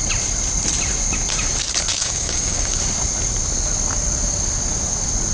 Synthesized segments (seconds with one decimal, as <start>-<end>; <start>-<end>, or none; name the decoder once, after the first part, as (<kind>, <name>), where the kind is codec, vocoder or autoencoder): 1.9-2.8 (codec, DAC)